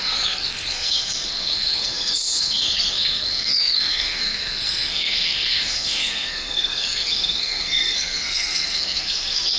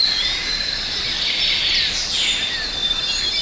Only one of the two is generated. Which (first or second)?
first